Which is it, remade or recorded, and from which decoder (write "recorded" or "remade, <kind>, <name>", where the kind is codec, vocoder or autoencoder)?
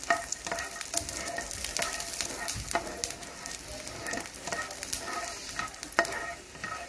recorded